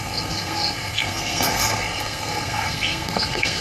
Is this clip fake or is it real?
fake